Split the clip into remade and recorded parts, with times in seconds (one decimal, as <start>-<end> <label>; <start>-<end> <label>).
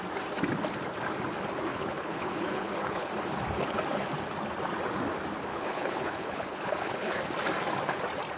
0.0-1.7 recorded; 1.7-3.1 remade; 3.1-5.5 recorded; 5.5-7.2 remade; 7.2-8.4 recorded